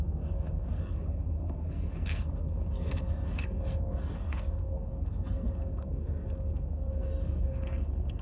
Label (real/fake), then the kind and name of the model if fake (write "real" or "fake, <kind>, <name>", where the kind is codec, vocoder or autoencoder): fake, codec, SNAC